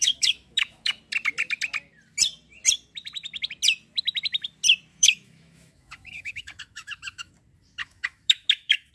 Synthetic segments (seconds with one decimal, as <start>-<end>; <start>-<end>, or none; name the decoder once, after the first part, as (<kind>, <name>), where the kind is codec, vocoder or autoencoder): 0.0-1.0 (autoencoder, DAC-VAE); 4.9-7.3; 7.8-8.9